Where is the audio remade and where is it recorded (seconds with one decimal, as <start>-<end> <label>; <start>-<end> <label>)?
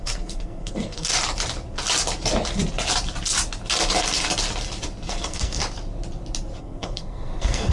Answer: 0.0-1.1 remade; 1.1-5.1 recorded; 5.1-5.6 remade; 5.6-6.6 recorded; 6.6-7.7 remade